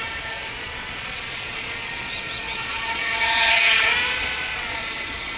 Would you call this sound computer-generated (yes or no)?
yes